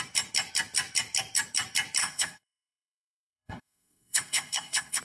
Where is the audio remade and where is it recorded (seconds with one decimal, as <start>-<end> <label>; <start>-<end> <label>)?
0.0-2.0 recorded; 2.0-5.0 remade